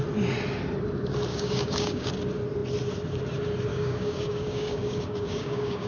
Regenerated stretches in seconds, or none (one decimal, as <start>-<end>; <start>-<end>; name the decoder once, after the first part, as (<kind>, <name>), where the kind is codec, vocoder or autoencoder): 1.3-2.1 (codec, DAC); 3.7-5.9